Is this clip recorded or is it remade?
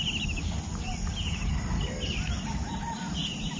recorded